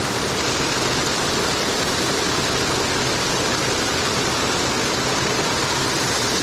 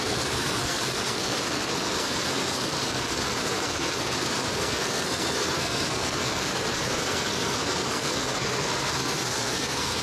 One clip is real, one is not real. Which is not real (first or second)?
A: second